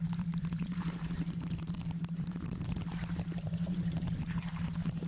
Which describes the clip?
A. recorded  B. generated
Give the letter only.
B